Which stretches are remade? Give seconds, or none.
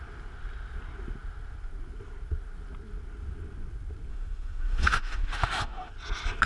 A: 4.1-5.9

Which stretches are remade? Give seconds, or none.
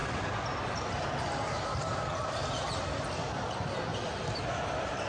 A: 0.0-3.1; 3.9-5.1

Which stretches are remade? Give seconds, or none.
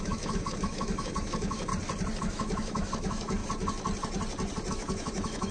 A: 0.0-1.7; 2.2-3.4; 4.7-5.5